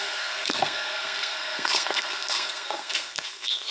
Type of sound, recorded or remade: remade